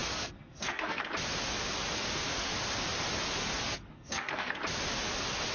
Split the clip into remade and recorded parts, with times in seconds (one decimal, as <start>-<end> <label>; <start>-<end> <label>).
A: 0.0-1.0 remade; 1.0-3.9 recorded; 3.9-4.6 remade; 4.6-5.5 recorded